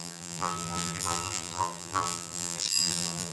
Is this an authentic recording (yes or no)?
no